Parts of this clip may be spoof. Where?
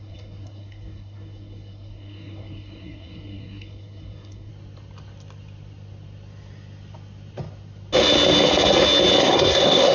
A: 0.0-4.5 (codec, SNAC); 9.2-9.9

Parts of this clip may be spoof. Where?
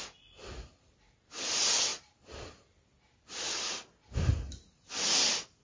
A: none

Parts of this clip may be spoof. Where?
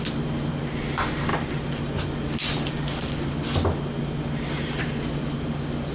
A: none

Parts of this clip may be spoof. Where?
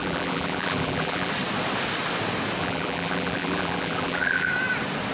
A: 0.0-1.3 (vocoder, BigVGAN v2); 2.6-4.5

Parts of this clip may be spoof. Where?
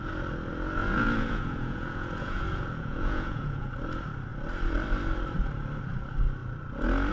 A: 0.8-3.7 (vocoder, Vocos)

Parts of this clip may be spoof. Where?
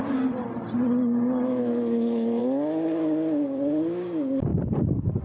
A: 1.5-2.4 (autoencoder, DAC-VAE)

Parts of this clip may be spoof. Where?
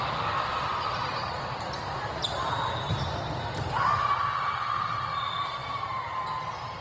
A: 0.5-1.1 (vocoder, BigVGAN v2); 5.6-6.3